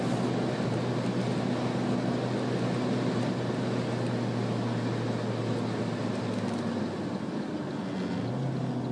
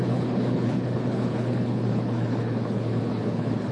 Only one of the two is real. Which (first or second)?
first